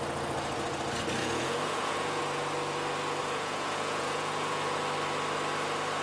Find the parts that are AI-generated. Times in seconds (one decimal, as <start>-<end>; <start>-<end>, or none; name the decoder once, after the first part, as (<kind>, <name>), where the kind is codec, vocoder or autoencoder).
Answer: 1.2-2.2 (vocoder, Vocos); 3.2-4.8